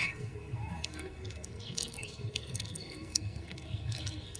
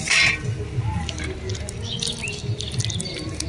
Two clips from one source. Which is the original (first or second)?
second